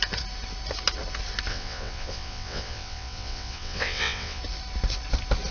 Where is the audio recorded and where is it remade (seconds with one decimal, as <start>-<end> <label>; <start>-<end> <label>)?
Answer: 0.0-1.5 recorded; 1.5-4.4 remade; 4.4-5.5 recorded